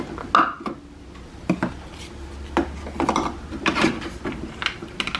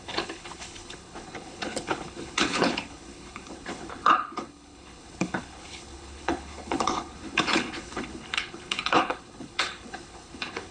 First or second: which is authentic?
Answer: first